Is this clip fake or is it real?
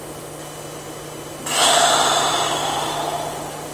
real